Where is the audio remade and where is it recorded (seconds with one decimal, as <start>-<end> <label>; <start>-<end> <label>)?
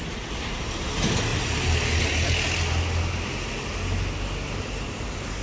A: 0.0-5.4 recorded